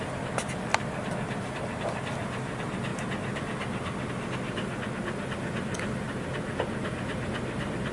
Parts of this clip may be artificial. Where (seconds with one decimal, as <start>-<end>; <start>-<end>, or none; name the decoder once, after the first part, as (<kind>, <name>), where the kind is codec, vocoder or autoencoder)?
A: none

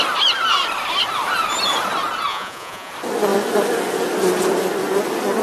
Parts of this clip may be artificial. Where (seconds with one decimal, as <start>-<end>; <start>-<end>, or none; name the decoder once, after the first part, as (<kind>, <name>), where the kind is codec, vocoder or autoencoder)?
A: 2.3-2.9 (vocoder, Vocos)

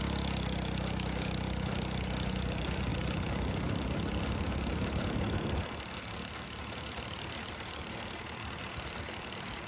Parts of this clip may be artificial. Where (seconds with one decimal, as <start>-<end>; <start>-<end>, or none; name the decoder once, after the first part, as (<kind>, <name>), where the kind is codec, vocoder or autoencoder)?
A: none

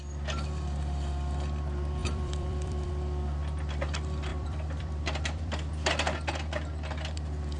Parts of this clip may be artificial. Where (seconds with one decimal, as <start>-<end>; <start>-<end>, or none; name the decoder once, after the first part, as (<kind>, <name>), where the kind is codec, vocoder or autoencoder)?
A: 2.0-2.9 (vocoder, BigVGAN v2); 4.3-5.7

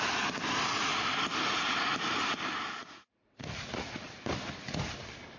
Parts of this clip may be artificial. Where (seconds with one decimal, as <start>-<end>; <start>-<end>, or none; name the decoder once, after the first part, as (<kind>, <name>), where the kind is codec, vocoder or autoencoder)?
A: 2.8-4.1 (vocoder, Vocos)

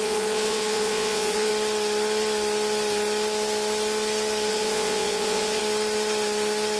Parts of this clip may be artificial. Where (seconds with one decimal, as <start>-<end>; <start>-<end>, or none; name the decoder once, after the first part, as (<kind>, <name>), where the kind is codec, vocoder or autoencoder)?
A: 0.0-1.5 (vocoder, Vocos); 4.5-5.6

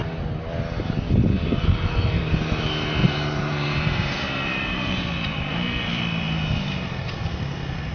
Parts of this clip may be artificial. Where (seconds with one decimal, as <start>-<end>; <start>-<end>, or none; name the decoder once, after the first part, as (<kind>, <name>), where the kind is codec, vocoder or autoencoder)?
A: 3.0-5.0 (vocoder, BigVGAN v2)